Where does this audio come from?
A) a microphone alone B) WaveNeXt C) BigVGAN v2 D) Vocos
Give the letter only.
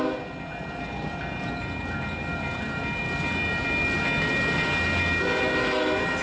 A